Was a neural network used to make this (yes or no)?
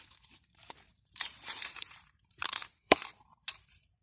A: yes